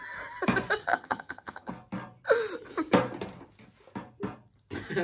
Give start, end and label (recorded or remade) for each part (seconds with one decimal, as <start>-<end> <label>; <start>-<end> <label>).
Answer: 0.0-0.8 recorded; 0.8-1.7 remade; 1.7-5.0 recorded